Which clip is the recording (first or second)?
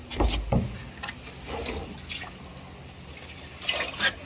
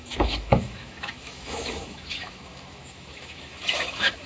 first